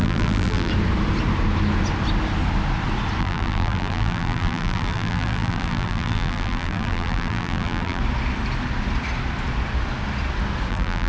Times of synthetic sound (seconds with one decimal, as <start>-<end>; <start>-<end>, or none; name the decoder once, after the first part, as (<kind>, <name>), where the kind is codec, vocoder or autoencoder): 0.0-0.7 (vocoder, BigVGAN v2); 3.2-8.0; 10.7-11.1